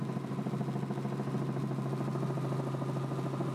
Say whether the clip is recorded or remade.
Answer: recorded